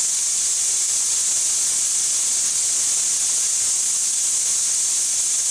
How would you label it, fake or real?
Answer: real